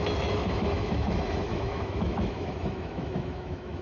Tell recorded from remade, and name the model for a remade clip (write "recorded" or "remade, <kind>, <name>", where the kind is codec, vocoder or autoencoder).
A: remade, autoencoder, DAC-VAE